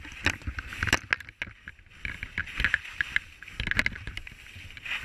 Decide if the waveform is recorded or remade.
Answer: recorded